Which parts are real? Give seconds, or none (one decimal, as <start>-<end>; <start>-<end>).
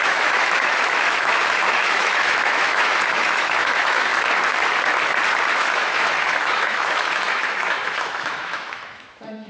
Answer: 4.1-5.5